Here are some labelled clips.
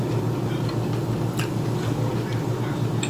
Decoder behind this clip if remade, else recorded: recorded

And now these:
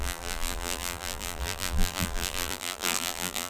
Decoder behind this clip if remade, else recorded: remade, vocoder, BigVGAN v2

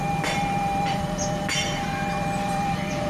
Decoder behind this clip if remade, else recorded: remade, vocoder, BigVGAN v2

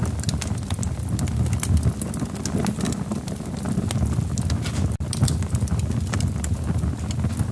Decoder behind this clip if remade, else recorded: recorded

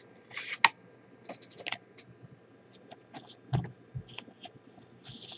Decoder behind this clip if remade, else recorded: recorded